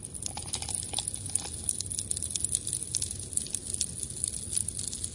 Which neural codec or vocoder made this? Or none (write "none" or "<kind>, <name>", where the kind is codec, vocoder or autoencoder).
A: none